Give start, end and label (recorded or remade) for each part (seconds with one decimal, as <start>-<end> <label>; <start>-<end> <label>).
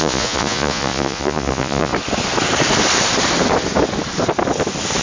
0.0-1.9 remade; 1.9-5.0 recorded